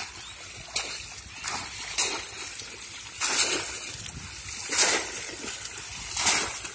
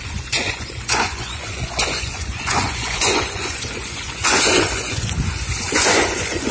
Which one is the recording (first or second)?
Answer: first